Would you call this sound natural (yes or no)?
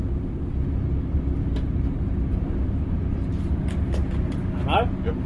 yes